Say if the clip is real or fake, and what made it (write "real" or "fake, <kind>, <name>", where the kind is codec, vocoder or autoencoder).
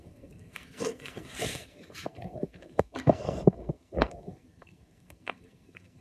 fake, codec, SNAC